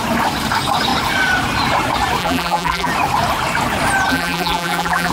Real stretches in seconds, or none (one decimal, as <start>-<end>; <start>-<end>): 0.0-2.2; 2.9-4.1